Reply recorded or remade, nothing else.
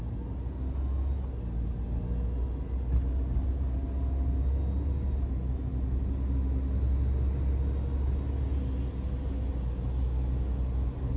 recorded